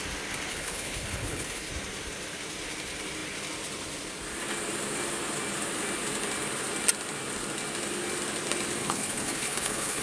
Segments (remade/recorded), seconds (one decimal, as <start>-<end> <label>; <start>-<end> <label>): 0.0-0.5 recorded; 0.5-1.7 remade; 1.7-8.8 recorded; 8.8-10.0 remade